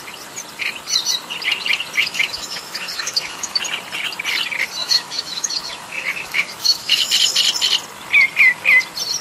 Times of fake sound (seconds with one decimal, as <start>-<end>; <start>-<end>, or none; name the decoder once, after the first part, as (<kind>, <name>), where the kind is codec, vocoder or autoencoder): 2.0-3.6 (autoencoder, DAC-VAE); 4.8-7.1